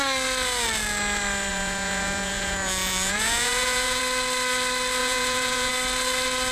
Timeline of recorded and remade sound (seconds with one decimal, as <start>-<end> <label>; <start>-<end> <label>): 0.0-1.5 recorded; 1.5-4.0 remade; 4.0-5.0 recorded; 5.0-5.7 remade; 5.7-6.5 recorded